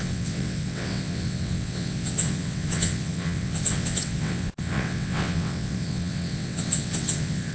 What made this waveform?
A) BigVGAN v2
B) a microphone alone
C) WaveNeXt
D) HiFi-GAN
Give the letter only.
C